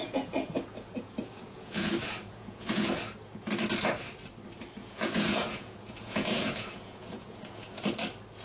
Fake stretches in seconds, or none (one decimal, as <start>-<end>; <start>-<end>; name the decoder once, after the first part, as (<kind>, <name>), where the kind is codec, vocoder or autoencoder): 0.0-2.9 (vocoder, Vocos); 4.8-7.9